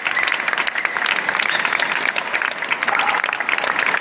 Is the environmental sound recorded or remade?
recorded